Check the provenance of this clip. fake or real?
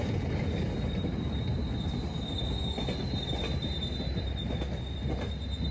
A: real